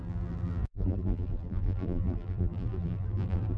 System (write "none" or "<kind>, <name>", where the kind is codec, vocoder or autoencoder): vocoder, BigVGAN v2